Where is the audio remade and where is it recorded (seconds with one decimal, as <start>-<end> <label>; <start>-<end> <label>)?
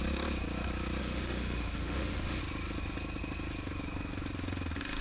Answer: 0.0-1.0 recorded; 1.0-2.4 remade; 2.4-5.0 recorded